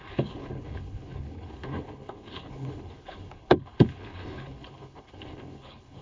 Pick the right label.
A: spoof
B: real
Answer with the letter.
A